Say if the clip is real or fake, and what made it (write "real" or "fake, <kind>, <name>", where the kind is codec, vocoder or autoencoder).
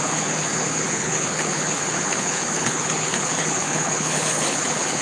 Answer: fake, codec, HILCodec